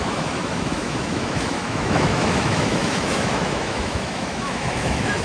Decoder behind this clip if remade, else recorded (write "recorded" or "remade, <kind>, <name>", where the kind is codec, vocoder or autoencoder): remade, autoencoder, DAC-VAE